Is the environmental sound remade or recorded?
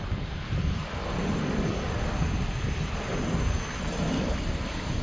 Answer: recorded